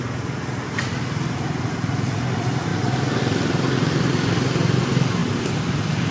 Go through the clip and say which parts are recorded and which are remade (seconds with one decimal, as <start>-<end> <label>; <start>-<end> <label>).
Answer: 0.0-6.1 recorded